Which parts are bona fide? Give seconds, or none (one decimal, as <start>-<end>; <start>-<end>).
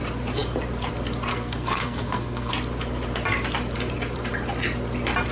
0.0-1.3; 2.5-5.3